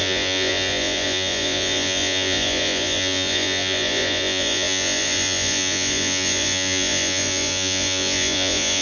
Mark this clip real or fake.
fake